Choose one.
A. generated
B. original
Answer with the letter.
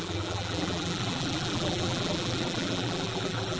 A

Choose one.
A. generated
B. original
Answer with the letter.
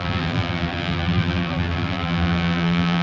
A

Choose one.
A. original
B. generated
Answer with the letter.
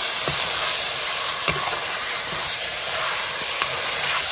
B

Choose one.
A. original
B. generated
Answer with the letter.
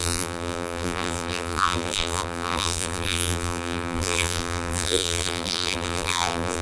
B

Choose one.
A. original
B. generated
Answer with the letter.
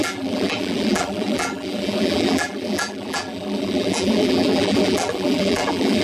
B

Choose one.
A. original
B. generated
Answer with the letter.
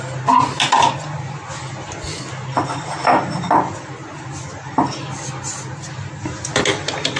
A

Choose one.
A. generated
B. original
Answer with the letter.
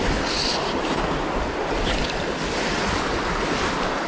B